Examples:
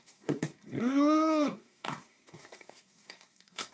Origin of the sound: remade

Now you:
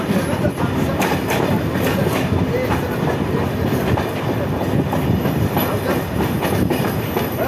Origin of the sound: recorded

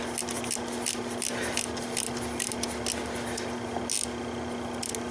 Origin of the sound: recorded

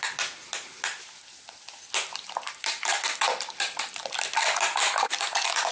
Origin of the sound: recorded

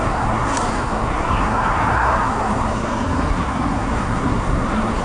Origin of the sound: remade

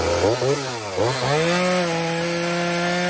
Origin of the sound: recorded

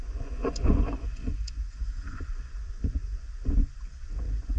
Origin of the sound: remade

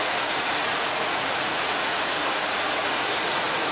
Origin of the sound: remade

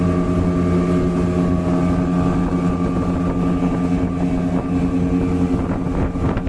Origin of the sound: recorded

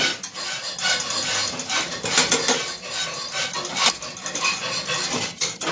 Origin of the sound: recorded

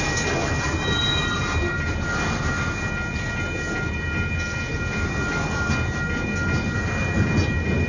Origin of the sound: recorded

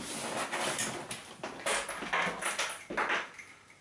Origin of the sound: recorded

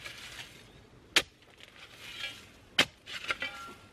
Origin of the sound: recorded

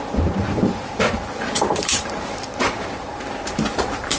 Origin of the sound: remade